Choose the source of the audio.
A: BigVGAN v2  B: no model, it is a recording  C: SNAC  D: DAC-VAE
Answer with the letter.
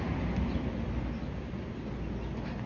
B